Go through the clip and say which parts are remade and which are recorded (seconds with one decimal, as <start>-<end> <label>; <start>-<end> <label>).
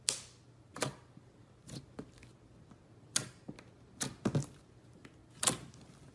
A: 0.0-6.1 recorded